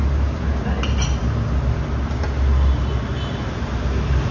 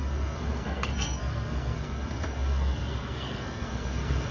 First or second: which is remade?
second